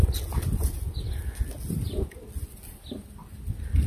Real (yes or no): yes